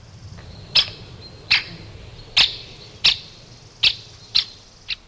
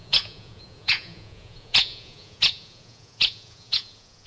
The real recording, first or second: first